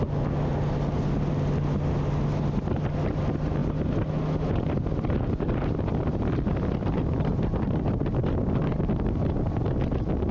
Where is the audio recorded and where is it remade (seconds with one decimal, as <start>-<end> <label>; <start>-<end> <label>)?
0.0-10.3 recorded